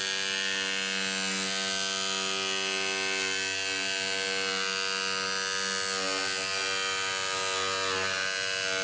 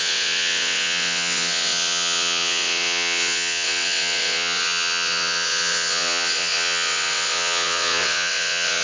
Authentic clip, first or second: first